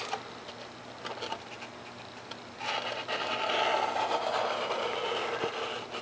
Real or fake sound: real